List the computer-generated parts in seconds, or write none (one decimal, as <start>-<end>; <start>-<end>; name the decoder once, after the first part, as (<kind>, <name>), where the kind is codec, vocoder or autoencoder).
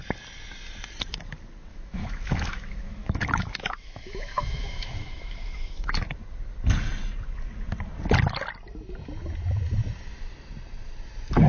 1.7-6.0 (autoencoder, DAC-VAE)